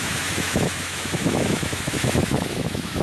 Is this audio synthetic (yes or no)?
yes